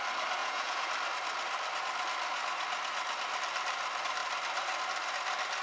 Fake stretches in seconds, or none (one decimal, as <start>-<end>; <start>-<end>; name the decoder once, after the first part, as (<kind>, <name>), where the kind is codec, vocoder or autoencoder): 0.4-0.9 (vocoder, Vocos)